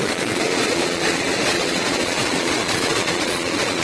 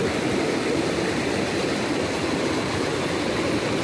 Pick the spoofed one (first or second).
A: first